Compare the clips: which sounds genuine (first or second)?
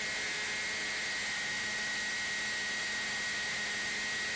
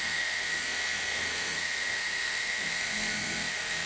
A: first